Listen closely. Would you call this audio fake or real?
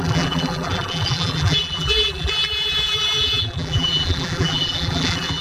fake